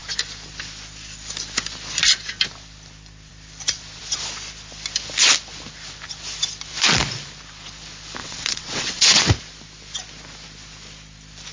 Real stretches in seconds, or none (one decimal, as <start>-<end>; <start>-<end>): 0.0-8.2; 9.3-11.5